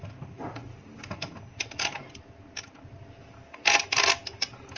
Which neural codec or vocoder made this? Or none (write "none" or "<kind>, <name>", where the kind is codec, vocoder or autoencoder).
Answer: none